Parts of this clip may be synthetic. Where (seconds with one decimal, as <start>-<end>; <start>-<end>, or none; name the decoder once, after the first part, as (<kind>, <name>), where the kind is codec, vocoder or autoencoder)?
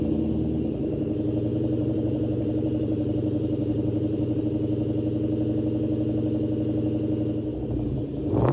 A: 1.5-4.4 (vocoder, BigVGAN v2)